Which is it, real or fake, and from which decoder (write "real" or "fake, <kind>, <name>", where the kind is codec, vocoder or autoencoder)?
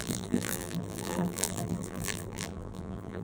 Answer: fake, vocoder, BigVGAN v2